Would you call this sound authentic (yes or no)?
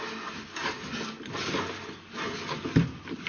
yes